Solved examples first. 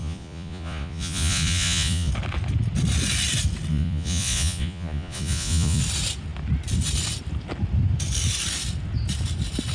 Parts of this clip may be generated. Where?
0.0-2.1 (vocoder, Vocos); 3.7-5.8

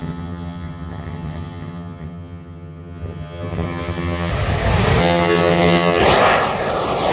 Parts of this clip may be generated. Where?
0.0-4.3 (vocoder, HiFi-GAN); 5.0-6.0

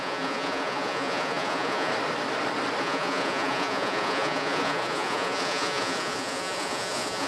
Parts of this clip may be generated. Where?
0.0-1.9 (vocoder, Vocos); 2.8-7.3

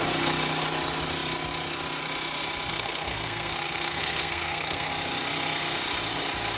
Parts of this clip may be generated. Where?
2.7-4.9 (codec, SNAC)

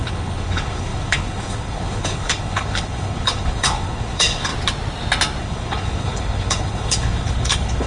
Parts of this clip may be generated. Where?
0.0-4.5 (codec, HILCodec); 5.4-7.9

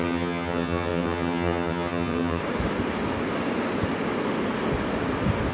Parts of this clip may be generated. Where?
0.0-2.4 (vocoder, HiFi-GAN)